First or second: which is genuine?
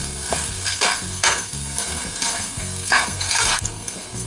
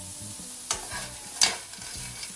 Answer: second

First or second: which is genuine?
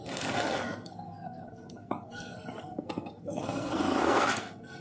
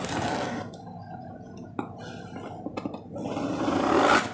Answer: second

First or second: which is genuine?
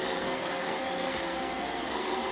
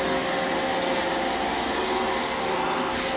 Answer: second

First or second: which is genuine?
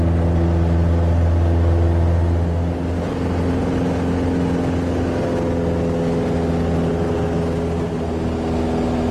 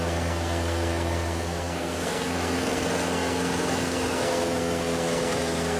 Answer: first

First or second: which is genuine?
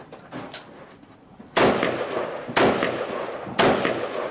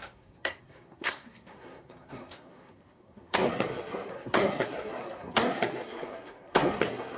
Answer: first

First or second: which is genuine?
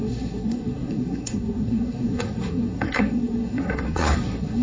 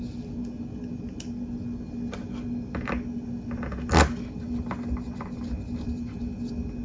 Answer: second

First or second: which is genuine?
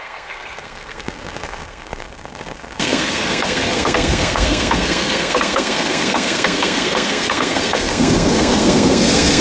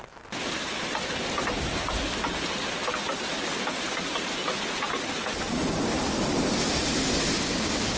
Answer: second